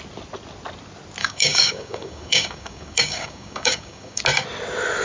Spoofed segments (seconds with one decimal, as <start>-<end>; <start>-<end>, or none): 1.2-4.2